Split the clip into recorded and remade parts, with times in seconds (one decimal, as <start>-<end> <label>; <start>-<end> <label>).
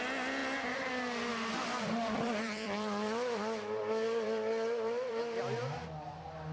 0.0-0.4 recorded; 0.4-0.9 remade; 0.9-1.3 recorded; 1.3-5.2 remade; 5.2-6.5 recorded